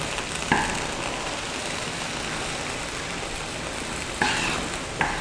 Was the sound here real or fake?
real